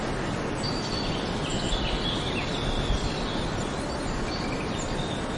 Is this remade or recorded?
recorded